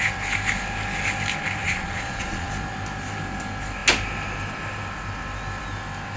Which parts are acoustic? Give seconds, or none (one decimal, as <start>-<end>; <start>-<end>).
0.0-1.6; 2.5-6.2